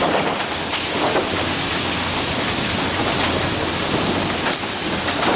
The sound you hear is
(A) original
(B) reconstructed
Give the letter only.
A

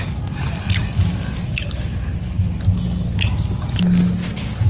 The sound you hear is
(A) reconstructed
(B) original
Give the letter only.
B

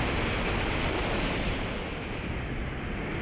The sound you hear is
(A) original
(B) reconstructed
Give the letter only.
A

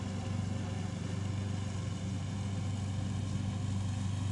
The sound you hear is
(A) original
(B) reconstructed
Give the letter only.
A